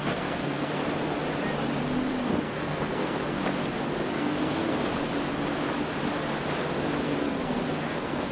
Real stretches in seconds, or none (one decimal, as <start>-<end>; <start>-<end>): 0.8-2.4; 3.4-4.1; 4.9-7.0